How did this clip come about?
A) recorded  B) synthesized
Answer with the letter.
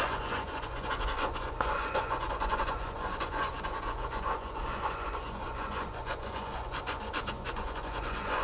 B